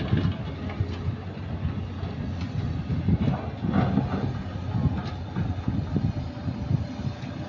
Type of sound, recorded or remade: recorded